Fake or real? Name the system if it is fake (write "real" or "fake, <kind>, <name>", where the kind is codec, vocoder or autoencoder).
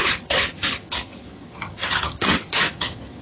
fake, vocoder, HiFi-GAN